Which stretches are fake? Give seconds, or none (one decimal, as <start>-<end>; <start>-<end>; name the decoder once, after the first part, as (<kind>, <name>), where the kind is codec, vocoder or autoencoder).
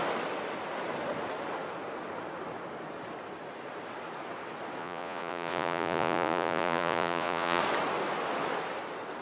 4.8-7.6 (vocoder, Vocos)